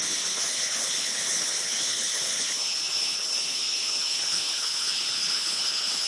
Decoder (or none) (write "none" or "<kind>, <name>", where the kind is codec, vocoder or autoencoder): codec, HILCodec